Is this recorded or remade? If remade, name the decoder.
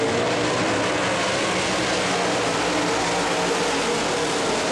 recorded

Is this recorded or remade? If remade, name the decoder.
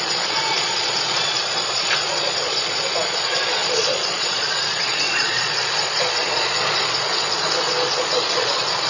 remade, vocoder, Vocos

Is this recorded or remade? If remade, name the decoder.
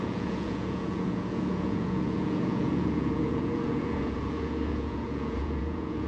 remade, vocoder, Vocos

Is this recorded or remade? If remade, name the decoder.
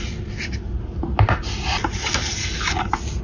recorded